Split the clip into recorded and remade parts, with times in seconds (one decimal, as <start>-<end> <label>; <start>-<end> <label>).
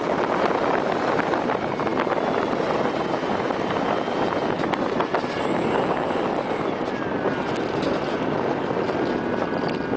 0.0-10.0 recorded